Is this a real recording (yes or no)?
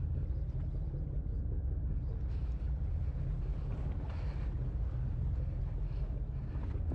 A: yes